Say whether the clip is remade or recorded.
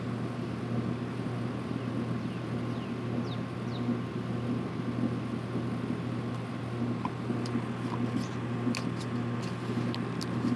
recorded